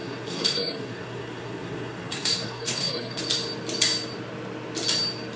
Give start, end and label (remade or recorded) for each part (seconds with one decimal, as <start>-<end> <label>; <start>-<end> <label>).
0.0-3.2 remade; 3.2-5.4 recorded

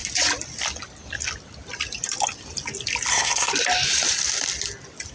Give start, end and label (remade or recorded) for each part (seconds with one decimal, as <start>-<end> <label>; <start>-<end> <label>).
0.0-3.1 recorded; 3.1-3.5 remade; 3.5-5.1 recorded

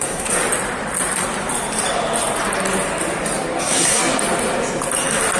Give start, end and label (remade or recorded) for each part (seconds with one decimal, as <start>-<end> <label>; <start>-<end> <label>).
0.0-0.4 remade; 0.4-3.6 recorded; 3.6-4.0 remade; 4.0-5.4 recorded

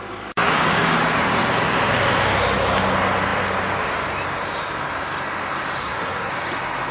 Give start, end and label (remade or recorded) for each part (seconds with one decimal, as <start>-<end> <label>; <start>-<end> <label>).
0.0-5.8 recorded; 5.8-6.3 remade; 6.3-6.9 recorded

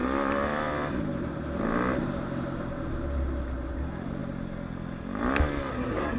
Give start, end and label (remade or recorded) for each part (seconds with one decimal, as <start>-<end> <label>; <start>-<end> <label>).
0.0-5.7 recorded; 5.7-6.2 remade

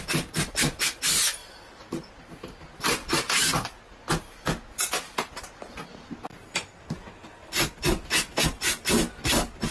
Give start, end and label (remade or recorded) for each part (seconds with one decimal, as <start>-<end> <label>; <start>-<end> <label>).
0.0-9.7 recorded